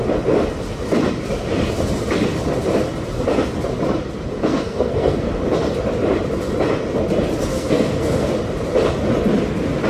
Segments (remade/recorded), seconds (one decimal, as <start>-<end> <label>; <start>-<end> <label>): 0.0-4.4 recorded; 4.4-5.3 remade; 5.3-7.5 recorded; 7.5-8.3 remade; 8.3-9.9 recorded